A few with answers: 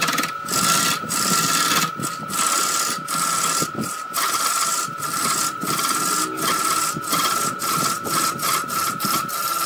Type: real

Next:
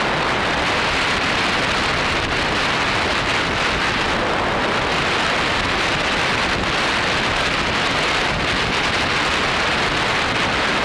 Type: real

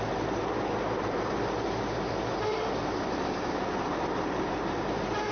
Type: fake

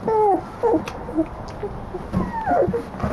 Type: real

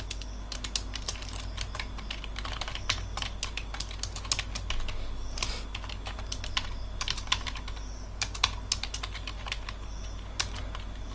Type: real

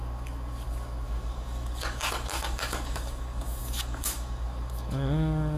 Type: fake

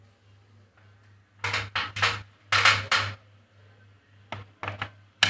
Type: real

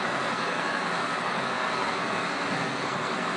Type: fake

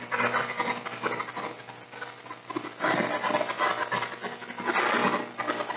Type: real